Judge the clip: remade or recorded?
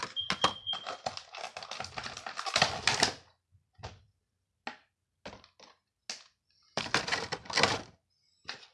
recorded